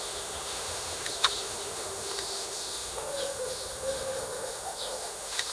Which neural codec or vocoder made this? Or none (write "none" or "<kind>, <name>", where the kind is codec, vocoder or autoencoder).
autoencoder, DAC-VAE